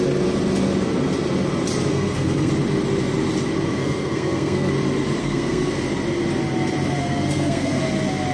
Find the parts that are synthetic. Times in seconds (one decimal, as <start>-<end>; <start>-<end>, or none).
1.9-2.5; 3.8-4.7; 5.2-5.7; 7.0-7.8